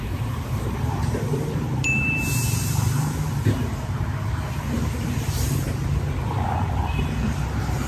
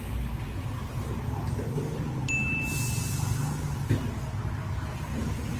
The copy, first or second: first